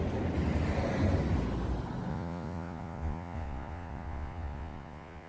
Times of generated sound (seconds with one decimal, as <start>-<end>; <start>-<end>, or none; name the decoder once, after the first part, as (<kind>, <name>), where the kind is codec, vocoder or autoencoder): 2.1-5.3 (vocoder, Vocos)